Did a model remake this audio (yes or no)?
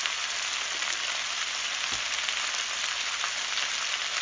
no